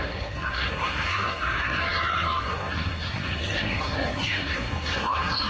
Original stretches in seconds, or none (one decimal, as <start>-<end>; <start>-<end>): none